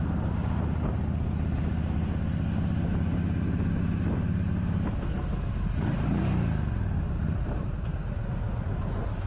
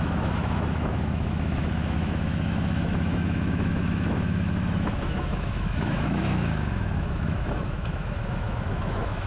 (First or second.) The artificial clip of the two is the second